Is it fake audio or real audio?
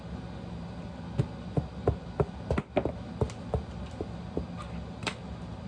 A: real